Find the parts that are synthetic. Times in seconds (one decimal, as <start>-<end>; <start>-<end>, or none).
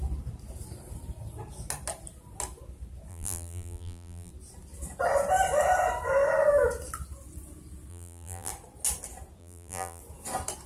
3.1-4.3; 7.9-8.5; 9.4-10.0